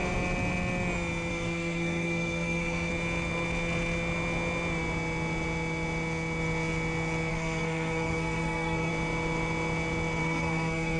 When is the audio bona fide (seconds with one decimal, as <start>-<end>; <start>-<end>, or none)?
0.0-1.3; 2.9-7.3; 8.9-10.2